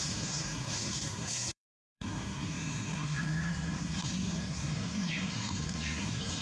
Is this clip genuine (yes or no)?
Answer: no